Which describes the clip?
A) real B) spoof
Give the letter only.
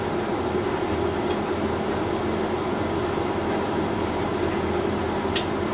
A